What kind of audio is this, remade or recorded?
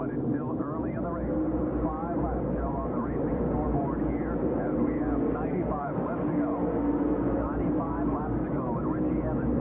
remade